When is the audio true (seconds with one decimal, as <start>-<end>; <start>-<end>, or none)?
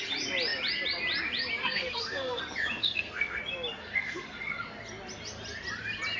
0.0-1.6; 2.4-2.8; 3.4-3.8; 4.6-6.2